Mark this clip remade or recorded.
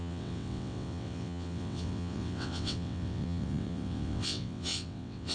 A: remade